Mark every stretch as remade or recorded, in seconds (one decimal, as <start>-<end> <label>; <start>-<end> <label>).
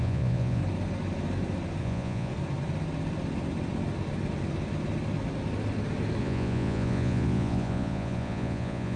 0.0-0.6 remade; 0.6-1.8 recorded; 1.8-2.3 remade; 2.3-6.2 recorded; 6.2-9.0 remade